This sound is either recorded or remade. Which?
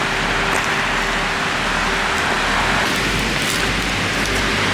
recorded